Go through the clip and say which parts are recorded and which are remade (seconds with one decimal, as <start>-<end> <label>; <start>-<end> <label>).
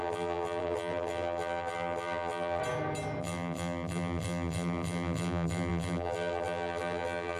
0.0-2.6 remade; 2.6-3.2 recorded; 3.2-7.4 remade